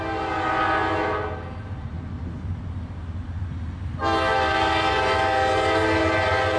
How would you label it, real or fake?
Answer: real